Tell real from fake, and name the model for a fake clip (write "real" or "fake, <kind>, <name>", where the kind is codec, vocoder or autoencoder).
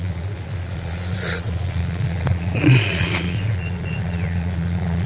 fake, vocoder, Vocos